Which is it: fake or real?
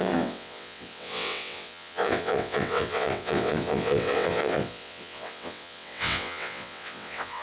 fake